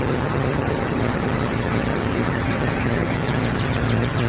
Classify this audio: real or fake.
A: fake